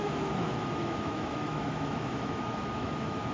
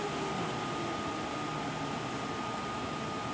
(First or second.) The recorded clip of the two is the second